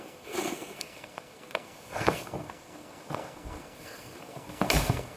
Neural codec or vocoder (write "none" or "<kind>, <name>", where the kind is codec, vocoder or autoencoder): codec, SNAC